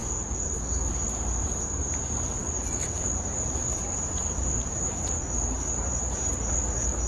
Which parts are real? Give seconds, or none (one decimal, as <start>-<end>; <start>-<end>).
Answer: none